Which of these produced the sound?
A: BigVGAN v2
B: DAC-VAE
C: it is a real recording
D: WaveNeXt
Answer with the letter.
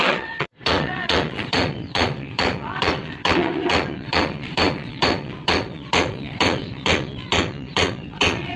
D